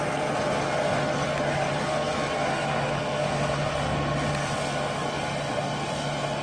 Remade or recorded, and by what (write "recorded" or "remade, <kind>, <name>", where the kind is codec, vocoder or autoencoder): recorded